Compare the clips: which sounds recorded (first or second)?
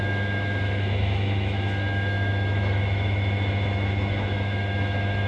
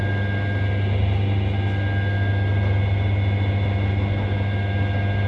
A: second